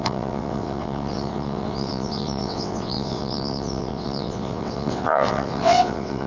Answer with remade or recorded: remade